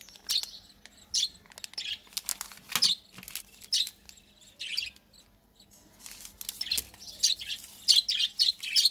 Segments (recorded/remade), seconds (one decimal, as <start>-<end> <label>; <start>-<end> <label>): 0.0-8.9 recorded